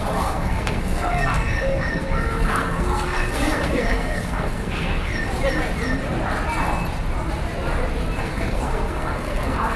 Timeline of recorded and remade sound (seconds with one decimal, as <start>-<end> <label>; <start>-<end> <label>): 0.0-5.1 remade; 5.1-8.2 recorded; 8.2-9.8 remade